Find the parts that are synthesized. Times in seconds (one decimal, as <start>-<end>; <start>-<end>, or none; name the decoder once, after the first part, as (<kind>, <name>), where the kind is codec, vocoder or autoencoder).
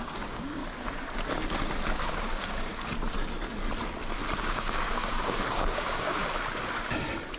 0.0-0.6 (codec, DAC); 2.1-2.7; 4.4-6.2